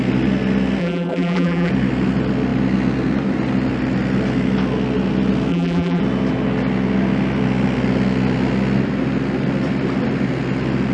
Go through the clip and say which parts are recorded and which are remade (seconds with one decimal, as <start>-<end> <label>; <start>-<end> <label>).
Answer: 0.0-0.8 recorded; 0.8-1.7 remade; 1.7-5.5 recorded; 5.5-6.0 remade; 6.0-10.9 recorded